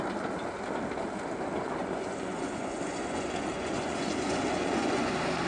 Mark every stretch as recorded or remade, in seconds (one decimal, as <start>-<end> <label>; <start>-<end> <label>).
0.0-1.8 recorded; 1.8-5.1 remade; 5.1-5.5 recorded